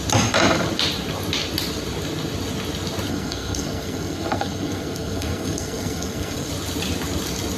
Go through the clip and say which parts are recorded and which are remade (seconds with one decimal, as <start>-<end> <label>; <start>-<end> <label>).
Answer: 0.0-3.1 recorded; 3.1-6.5 remade; 6.5-7.6 recorded